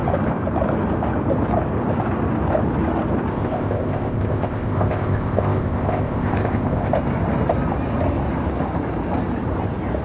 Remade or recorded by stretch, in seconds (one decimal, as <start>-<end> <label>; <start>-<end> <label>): 0.0-3.3 recorded; 3.3-6.9 remade; 6.9-10.0 recorded